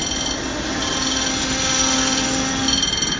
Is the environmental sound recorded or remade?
recorded